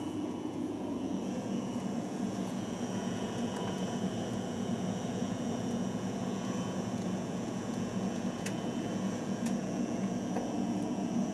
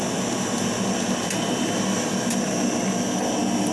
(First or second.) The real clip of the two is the second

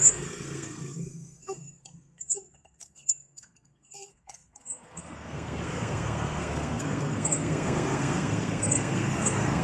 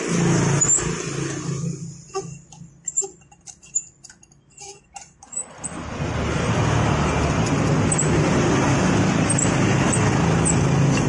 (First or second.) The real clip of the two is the second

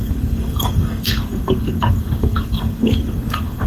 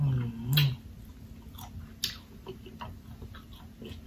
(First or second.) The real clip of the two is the second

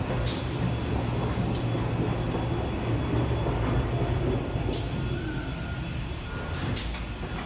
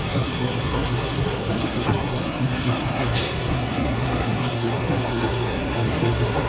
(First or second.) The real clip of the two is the first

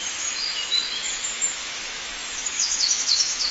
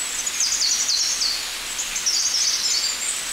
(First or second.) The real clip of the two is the second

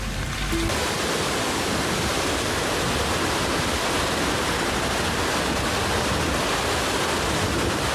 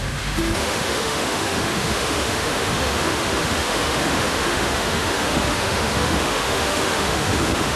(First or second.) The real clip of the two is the first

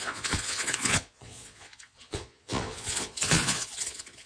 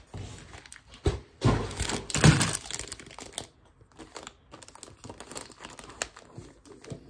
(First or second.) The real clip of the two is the second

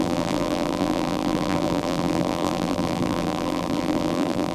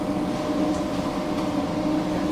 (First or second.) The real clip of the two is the second